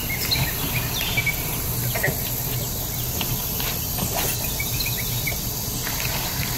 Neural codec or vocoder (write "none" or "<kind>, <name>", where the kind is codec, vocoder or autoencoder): none